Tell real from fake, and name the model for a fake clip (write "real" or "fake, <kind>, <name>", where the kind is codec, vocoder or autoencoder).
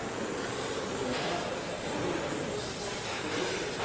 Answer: fake, vocoder, BigVGAN v2